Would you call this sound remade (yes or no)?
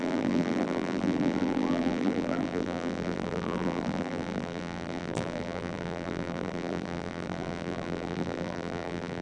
yes